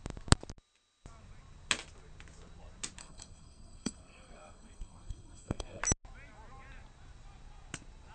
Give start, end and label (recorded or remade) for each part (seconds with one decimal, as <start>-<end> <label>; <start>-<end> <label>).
0.0-3.0 recorded; 3.0-5.8 remade; 5.8-8.1 recorded